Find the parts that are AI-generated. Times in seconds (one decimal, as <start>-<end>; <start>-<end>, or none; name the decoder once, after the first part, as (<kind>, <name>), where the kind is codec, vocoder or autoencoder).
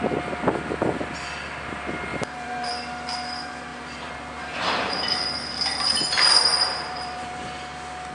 2.1-2.7 (vocoder, BigVGAN v2); 3.7-7.3